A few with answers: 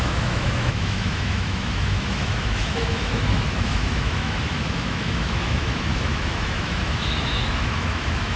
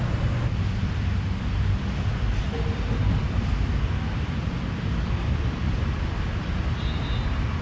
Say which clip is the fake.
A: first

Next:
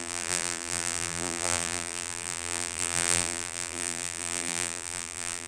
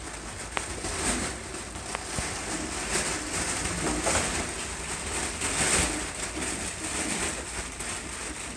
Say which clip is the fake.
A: first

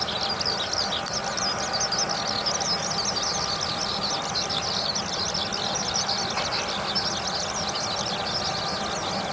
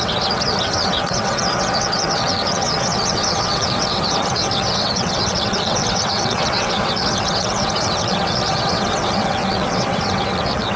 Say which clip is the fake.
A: second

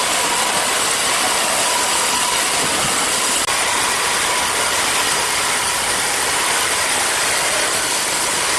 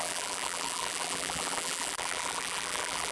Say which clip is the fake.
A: second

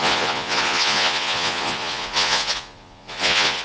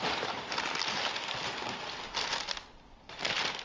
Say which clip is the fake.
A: first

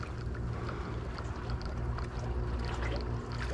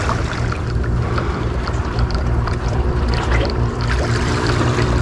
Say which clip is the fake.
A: second